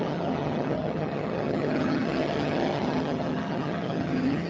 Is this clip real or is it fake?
fake